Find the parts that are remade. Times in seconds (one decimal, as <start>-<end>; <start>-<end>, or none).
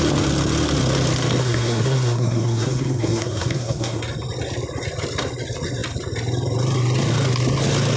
1.4-4.0